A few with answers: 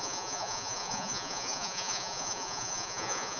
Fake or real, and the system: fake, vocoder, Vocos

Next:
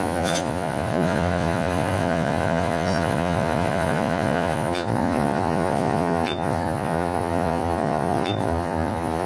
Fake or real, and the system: fake, vocoder, Vocos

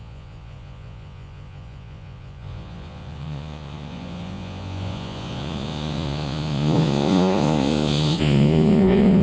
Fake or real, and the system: fake, vocoder, Vocos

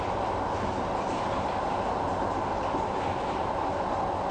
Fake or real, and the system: real